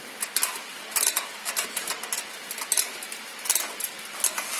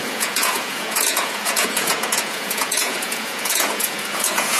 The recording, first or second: first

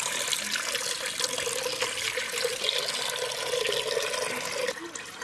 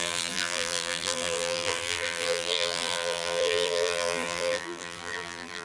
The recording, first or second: first